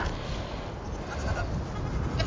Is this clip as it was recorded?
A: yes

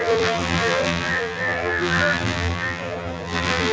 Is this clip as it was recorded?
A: no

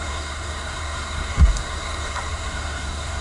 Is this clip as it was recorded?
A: no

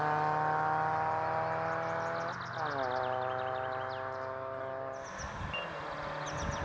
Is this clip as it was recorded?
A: yes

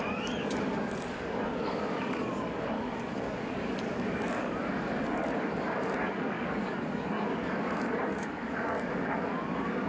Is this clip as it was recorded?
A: no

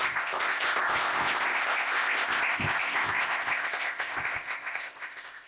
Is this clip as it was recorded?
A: no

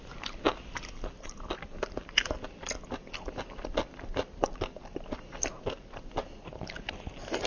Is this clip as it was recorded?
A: yes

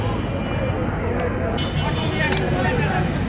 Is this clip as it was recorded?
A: yes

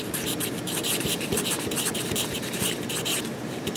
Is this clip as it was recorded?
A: no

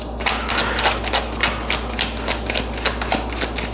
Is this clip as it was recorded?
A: yes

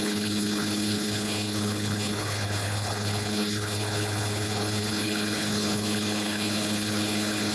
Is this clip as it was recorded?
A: no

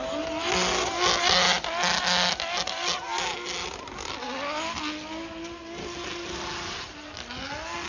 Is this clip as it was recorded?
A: yes